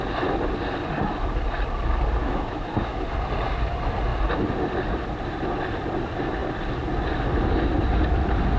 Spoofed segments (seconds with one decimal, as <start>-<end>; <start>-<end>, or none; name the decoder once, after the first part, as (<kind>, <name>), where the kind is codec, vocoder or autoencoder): 2.2-3.0 (autoencoder, DAC-VAE)